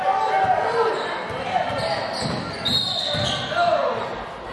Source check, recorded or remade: recorded